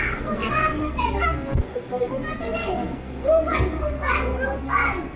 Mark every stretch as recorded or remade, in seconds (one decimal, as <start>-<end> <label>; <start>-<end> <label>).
0.0-5.2 remade